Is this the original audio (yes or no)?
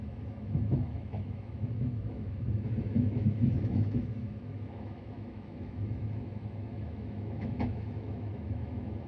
no